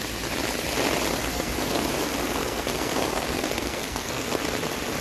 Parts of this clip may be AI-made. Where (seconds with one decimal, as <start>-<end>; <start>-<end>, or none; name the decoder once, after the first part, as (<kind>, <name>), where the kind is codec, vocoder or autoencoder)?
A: 1.2-1.9 (codec, SNAC); 2.4-4.4